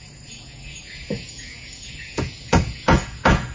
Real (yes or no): no